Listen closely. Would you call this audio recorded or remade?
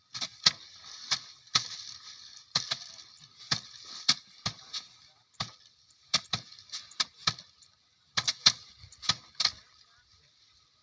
recorded